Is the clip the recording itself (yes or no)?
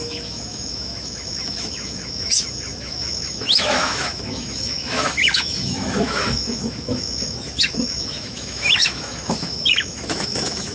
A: no